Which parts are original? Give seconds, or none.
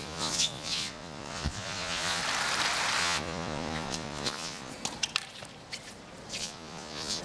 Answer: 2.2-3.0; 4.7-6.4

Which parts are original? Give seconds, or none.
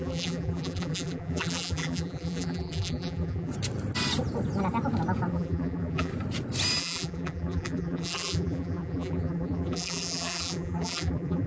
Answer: 3.5-5.3; 6.1-6.8